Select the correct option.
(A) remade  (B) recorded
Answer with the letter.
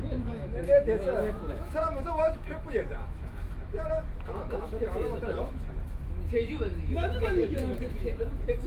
A